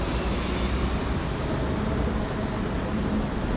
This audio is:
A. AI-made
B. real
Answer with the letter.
B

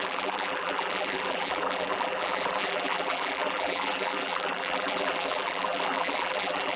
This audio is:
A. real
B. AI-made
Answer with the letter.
B